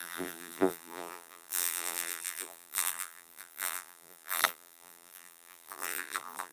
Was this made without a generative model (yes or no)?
no